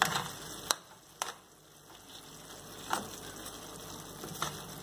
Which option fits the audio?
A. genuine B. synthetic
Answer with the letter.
A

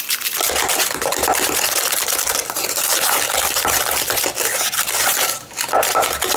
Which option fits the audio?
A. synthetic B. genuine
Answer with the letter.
A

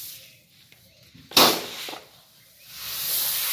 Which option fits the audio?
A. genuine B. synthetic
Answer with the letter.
A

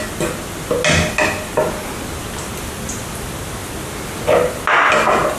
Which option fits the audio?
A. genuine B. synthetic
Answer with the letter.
A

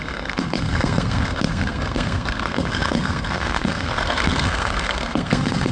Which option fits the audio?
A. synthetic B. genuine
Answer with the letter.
A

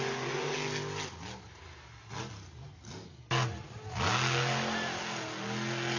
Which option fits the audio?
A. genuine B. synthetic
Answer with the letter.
A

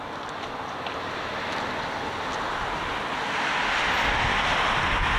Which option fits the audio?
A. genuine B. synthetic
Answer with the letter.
A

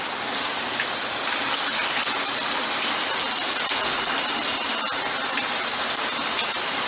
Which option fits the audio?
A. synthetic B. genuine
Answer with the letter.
B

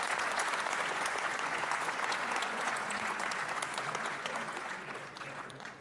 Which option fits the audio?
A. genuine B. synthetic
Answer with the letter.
B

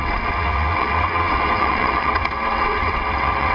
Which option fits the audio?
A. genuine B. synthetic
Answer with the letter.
B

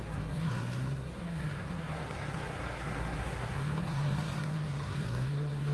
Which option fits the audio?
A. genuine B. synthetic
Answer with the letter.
B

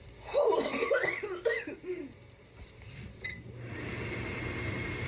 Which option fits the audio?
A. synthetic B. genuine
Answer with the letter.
A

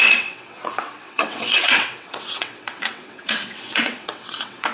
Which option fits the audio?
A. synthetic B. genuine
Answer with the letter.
A